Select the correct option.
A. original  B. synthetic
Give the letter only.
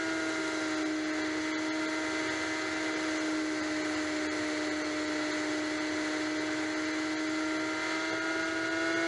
A